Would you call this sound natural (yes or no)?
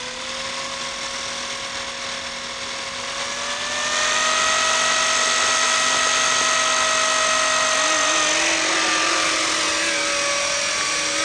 yes